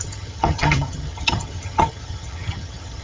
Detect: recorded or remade remade